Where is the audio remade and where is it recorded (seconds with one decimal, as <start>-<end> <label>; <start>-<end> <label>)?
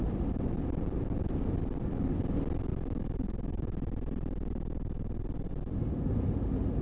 0.0-6.8 recorded